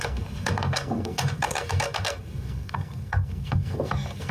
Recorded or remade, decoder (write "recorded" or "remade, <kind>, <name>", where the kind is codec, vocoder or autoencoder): remade, codec, SNAC